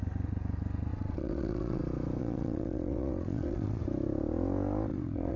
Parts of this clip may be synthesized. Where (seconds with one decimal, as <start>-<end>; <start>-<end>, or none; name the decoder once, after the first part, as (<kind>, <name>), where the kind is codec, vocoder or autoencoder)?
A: 0.9-1.8 (vocoder, WaveNeXt); 2.2-3.8; 4.9-5.4